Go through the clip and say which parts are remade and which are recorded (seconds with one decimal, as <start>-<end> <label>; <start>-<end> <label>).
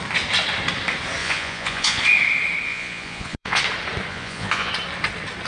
0.0-1.2 recorded; 1.2-2.0 remade; 2.0-2.7 recorded; 2.7-3.6 remade; 3.6-4.1 recorded; 4.1-4.7 remade; 4.7-5.5 recorded